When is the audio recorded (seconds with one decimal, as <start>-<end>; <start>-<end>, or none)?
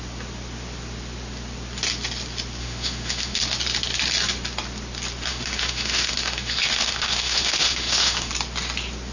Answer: 0.0-2.6; 3.4-5.3; 8.3-9.1